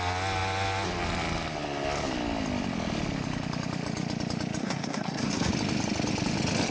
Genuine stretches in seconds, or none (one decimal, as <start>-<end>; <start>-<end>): 0.0-4.6; 5.5-6.7